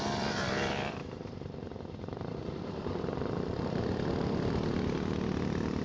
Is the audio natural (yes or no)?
no